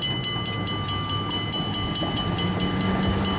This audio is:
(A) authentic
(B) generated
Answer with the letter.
A